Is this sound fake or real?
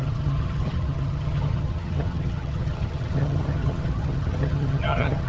fake